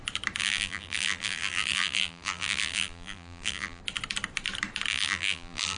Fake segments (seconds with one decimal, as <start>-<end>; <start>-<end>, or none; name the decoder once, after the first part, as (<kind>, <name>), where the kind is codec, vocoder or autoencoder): 0.4-3.8 (vocoder, BigVGAN v2); 4.9-5.8